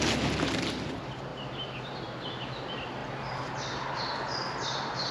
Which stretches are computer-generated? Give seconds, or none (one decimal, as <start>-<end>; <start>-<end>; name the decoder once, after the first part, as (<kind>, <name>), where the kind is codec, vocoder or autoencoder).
none